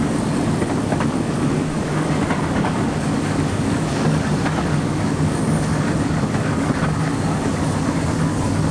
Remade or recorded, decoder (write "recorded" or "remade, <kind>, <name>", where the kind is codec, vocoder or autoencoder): remade, codec, DAC